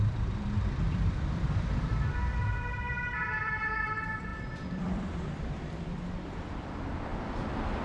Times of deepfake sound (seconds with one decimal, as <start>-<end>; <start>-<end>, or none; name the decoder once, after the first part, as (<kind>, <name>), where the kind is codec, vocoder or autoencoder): 0.0-7.8 (vocoder, BigVGAN v2)